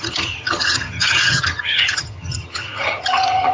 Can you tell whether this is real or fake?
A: fake